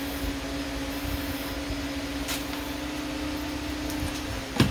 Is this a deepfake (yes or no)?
no